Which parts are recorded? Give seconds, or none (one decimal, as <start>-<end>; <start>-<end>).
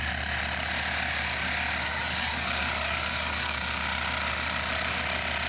0.0-1.9; 3.5-5.5